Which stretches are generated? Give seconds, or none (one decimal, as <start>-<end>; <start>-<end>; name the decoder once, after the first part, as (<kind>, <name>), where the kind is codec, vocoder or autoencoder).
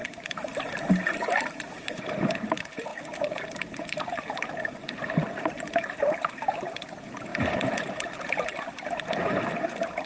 0.0-10.1 (vocoder, BigVGAN v2)